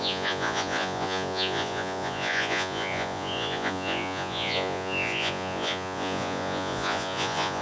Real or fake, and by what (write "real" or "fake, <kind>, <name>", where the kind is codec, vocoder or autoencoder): fake, vocoder, Vocos